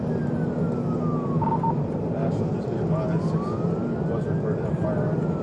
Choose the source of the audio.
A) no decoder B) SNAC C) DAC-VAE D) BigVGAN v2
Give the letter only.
A